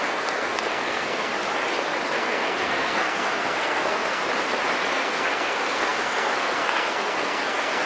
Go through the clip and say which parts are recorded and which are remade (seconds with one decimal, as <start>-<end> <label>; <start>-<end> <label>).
0.0-1.3 remade; 1.3-2.1 recorded; 2.1-4.2 remade; 4.2-4.9 recorded; 4.9-7.9 remade